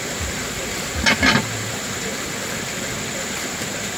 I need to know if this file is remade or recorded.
recorded